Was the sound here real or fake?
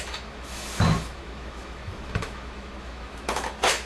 fake